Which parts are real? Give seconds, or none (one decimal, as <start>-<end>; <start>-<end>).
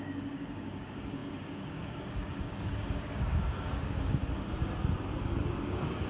4.2-5.5